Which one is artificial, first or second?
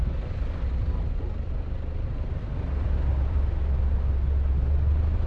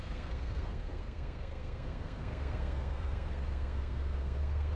second